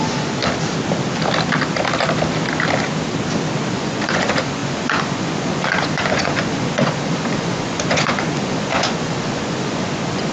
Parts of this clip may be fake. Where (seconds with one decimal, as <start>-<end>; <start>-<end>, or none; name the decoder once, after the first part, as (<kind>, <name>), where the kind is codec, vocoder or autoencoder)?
0.0-0.4 (vocoder, Vocos); 3.7-10.3